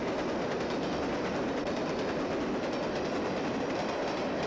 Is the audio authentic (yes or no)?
yes